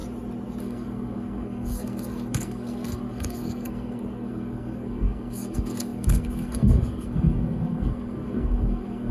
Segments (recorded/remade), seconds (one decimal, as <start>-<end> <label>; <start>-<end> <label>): 0.0-0.6 recorded; 0.6-9.1 remade